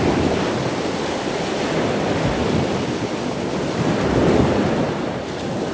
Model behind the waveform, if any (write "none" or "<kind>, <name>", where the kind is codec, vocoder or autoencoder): none